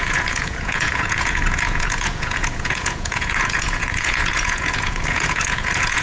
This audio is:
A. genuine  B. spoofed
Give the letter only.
B